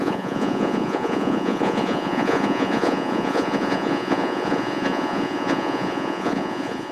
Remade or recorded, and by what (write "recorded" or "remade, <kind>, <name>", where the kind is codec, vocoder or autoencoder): remade, vocoder, Vocos